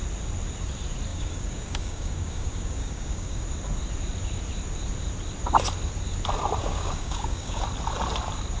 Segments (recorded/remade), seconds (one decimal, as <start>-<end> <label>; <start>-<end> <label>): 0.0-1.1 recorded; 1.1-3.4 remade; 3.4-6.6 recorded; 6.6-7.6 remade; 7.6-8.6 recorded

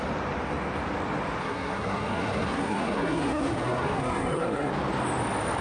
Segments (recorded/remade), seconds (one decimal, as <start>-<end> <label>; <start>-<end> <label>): 0.0-1.4 recorded; 1.4-4.7 remade; 4.7-5.6 recorded

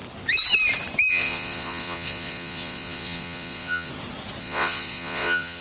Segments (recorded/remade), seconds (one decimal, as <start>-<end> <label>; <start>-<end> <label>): 0.0-1.1 recorded; 1.1-3.9 remade; 3.9-4.4 recorded; 4.4-5.6 remade

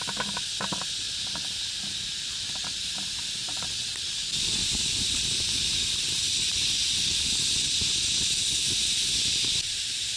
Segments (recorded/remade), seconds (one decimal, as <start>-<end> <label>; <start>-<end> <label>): 0.0-2.1 recorded; 2.1-6.6 remade; 6.6-10.2 recorded